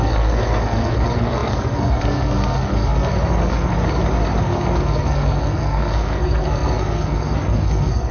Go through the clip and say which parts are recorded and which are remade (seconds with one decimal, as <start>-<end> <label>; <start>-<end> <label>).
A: 0.0-3.7 remade; 3.7-4.4 recorded; 4.4-8.1 remade

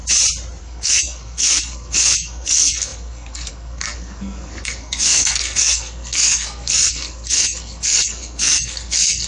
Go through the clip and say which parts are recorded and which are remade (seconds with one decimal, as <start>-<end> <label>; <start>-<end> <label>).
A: 0.0-0.6 recorded; 0.6-9.3 remade